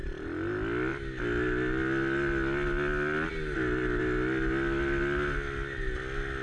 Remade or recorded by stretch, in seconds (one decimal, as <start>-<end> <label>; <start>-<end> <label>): 0.0-6.4 recorded